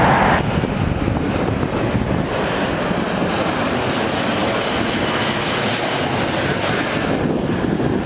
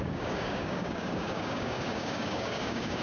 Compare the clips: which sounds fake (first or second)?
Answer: second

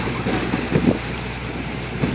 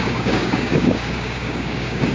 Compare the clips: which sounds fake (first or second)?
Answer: second